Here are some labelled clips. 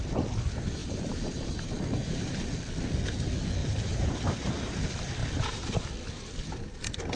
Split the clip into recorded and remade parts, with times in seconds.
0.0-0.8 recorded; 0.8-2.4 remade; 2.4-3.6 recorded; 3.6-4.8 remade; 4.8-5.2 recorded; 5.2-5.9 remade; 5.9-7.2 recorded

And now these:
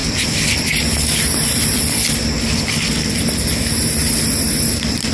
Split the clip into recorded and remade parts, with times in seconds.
0.0-3.1 remade; 3.1-5.1 recorded

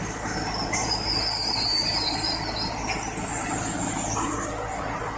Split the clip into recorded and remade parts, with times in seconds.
0.0-5.2 recorded

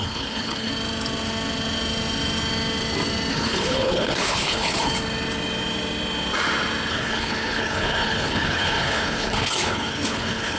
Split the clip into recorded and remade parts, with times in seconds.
0.0-0.7 remade; 0.7-3.3 recorded; 3.3-4.9 remade; 4.9-6.9 recorded; 6.9-10.6 remade